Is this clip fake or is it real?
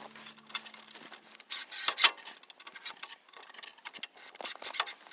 real